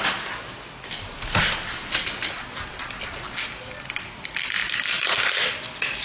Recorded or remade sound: recorded